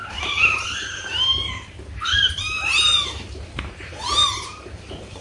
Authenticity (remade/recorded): remade